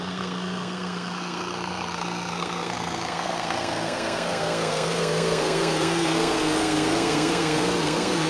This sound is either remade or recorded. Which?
remade